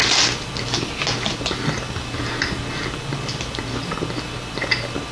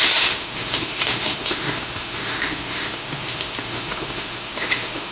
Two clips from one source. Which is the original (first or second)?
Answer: first